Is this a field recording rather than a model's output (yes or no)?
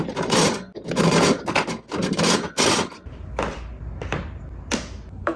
yes